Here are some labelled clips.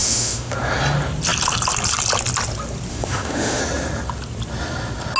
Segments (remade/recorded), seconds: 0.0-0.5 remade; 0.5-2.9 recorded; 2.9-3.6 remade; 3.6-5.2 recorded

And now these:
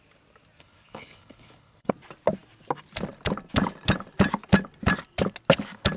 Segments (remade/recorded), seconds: 0.0-0.6 recorded; 0.6-1.9 remade; 1.9-6.0 recorded

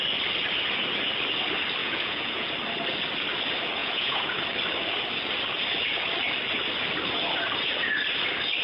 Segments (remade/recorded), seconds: 0.0-1.8 recorded; 1.8-2.5 remade; 2.5-3.8 recorded; 3.8-4.4 remade; 4.4-8.6 recorded